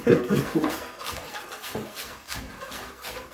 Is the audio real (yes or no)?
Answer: no